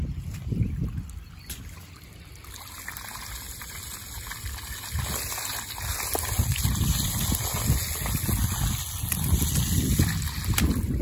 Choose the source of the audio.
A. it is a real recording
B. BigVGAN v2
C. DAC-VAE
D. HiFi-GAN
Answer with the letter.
A